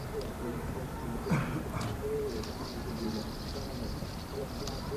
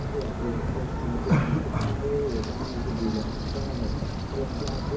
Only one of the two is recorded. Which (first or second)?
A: second